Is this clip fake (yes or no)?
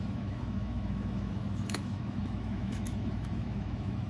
yes